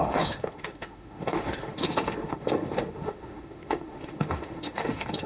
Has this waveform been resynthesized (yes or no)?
yes